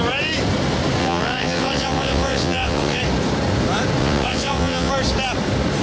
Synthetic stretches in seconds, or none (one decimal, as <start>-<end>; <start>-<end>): 1.0-3.0; 4.0-4.9